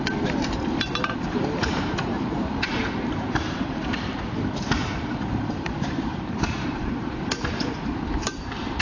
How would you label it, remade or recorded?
remade